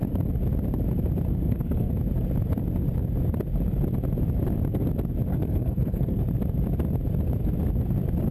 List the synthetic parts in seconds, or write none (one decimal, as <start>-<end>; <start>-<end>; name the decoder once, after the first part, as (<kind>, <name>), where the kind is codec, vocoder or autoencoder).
1.3-1.9 (codec, SNAC); 5.3-6.2